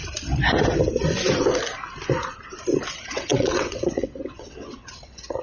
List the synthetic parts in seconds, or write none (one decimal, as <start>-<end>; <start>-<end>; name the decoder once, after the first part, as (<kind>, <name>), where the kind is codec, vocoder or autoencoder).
2.9-5.4 (vocoder, WaveNeXt)